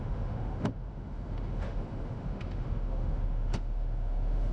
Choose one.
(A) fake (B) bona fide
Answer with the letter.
A